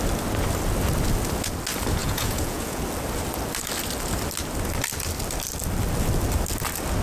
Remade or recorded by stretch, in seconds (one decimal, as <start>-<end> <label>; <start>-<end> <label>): 0.0-2.0 recorded; 2.0-2.8 remade; 2.8-7.0 recorded